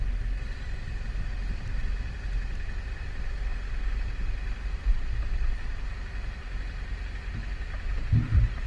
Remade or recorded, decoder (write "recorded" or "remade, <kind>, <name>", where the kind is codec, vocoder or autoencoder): recorded